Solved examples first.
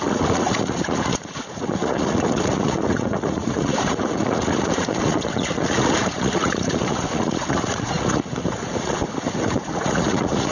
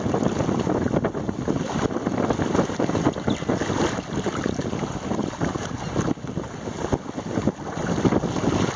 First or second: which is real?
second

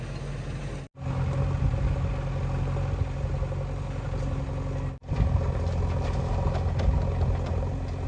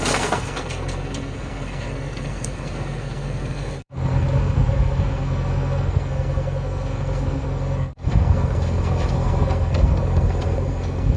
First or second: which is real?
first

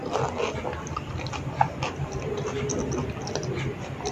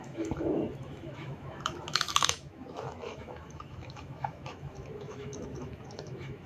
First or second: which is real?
first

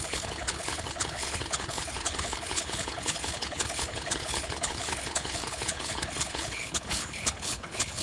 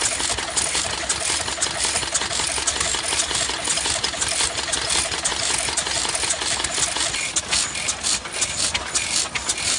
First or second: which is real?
second